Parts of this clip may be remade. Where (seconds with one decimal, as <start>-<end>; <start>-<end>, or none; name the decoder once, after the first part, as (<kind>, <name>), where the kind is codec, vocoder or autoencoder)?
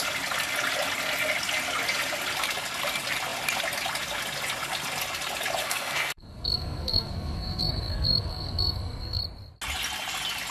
5.6-9.2 (codec, SNAC)